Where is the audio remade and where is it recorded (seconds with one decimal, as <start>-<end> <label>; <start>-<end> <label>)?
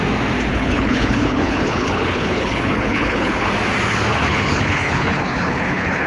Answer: 0.0-0.5 recorded; 0.5-3.5 remade; 3.5-4.1 recorded; 4.1-6.1 remade